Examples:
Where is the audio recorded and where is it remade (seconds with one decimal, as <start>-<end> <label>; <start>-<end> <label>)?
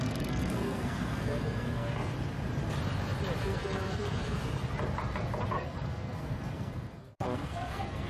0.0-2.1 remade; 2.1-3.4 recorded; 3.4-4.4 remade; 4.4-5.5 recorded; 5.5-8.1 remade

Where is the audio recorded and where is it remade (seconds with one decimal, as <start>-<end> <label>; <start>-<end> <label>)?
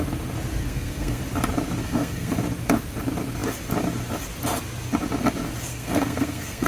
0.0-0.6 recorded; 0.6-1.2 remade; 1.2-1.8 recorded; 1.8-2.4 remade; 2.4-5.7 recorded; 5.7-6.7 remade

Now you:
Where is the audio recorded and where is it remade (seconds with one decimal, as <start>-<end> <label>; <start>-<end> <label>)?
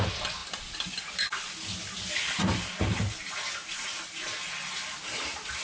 0.0-5.6 recorded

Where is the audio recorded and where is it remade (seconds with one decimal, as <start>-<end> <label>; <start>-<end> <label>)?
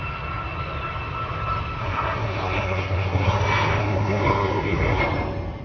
0.0-1.8 recorded; 1.8-3.4 remade; 3.4-3.8 recorded; 3.8-5.0 remade; 5.0-5.6 recorded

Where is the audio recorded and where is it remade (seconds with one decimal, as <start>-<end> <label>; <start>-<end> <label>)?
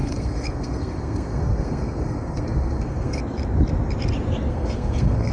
0.0-3.2 remade; 3.2-4.5 recorded; 4.5-5.3 remade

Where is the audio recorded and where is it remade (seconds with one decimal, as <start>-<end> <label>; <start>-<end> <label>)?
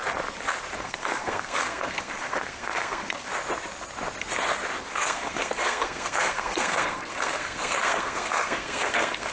0.0-0.8 recorded; 0.8-3.3 remade; 3.3-4.9 recorded; 4.9-9.3 remade